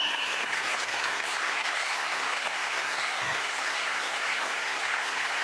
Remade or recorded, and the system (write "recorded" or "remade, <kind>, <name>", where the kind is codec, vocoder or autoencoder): remade, codec, SNAC